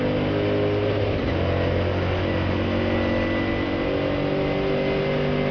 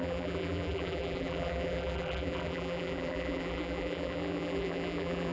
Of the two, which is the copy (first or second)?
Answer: second